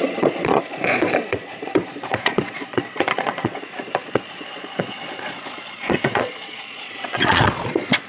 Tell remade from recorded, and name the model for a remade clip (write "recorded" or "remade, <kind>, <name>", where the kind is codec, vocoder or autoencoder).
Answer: remade, vocoder, Vocos